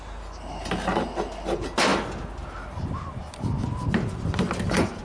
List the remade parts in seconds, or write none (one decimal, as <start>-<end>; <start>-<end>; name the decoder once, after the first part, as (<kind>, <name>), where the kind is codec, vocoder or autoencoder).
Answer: none